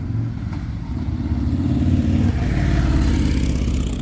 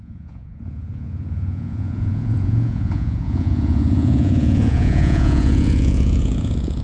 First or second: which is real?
first